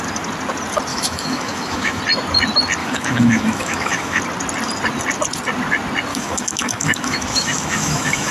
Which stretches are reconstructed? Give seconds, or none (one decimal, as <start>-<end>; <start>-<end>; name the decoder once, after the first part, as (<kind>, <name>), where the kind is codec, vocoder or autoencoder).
0.9-2.0 (autoencoder, DAC-VAE); 2.8-4.2; 6.1-8.3